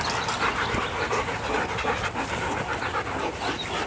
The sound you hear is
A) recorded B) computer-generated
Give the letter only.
A